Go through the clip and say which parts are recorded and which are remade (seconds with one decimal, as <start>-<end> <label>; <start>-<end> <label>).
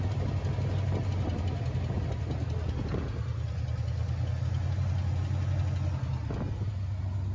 0.0-7.3 recorded